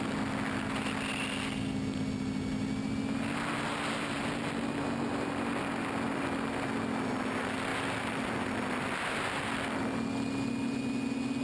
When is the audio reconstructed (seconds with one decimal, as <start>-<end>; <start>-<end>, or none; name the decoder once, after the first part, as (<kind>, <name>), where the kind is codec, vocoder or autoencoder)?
none